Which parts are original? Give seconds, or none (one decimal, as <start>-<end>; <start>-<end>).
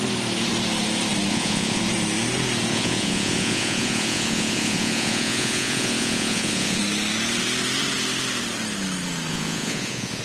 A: 0.0-1.3; 1.8-2.7; 6.8-9.3